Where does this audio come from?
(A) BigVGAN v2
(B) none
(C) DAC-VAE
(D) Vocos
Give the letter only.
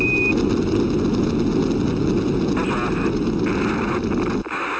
B